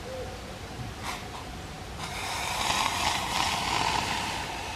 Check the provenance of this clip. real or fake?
real